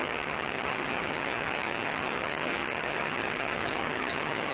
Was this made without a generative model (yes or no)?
no